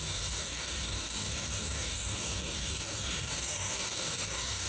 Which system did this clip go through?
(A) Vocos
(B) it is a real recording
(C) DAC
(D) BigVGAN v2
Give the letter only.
C